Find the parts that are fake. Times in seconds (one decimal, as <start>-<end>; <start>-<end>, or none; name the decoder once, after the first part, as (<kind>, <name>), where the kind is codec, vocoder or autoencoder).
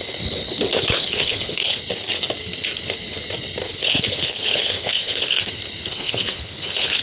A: 0.7-1.8 (codec, HILCodec); 3.6-5.5; 5.9-7.0